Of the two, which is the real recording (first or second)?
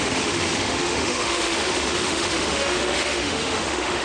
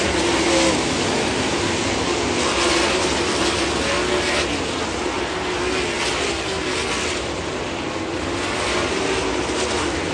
second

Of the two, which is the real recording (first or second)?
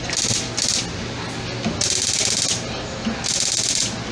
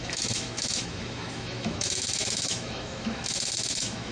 first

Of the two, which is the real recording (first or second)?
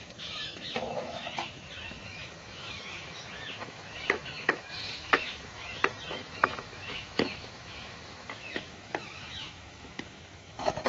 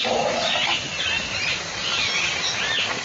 second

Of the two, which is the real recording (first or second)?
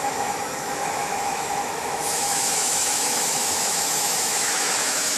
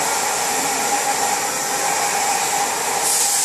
second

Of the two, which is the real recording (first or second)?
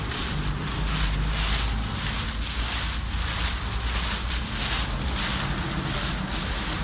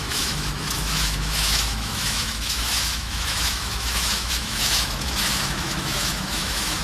first